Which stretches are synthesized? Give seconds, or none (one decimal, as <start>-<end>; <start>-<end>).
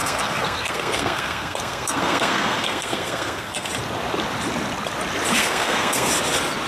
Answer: 0.0-3.7; 5.4-6.1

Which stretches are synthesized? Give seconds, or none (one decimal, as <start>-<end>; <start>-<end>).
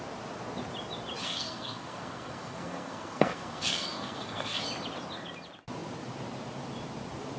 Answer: 1.2-4.6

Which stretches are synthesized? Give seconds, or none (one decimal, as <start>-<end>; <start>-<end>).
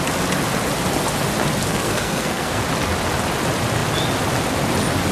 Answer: 1.7-2.6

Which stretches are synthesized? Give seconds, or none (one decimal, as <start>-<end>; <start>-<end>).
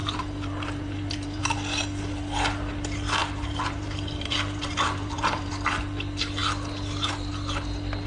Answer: 0.0-1.4; 3.2-5.5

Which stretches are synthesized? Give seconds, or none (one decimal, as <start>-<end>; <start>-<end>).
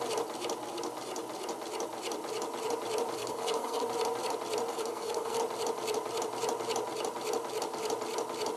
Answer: 3.2-3.8; 4.7-5.4